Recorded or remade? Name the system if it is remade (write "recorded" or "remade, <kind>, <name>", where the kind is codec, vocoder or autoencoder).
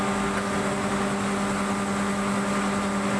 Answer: recorded